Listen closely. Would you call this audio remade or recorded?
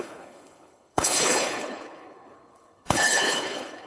remade